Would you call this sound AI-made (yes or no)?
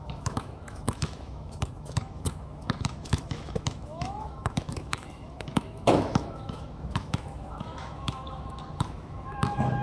yes